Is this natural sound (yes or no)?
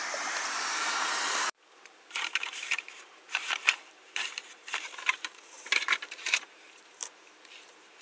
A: no